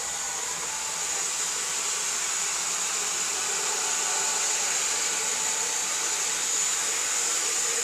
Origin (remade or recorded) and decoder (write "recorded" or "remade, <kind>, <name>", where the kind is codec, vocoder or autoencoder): recorded